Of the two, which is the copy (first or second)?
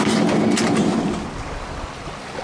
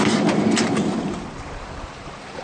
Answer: second